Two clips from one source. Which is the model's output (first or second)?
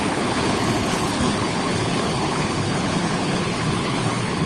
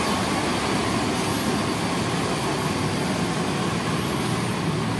first